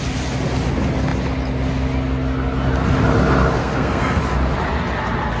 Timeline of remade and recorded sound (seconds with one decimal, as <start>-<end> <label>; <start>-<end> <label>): 0.0-3.6 recorded; 3.6-4.2 remade; 4.2-5.4 recorded